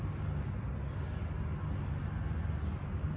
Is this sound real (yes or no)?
yes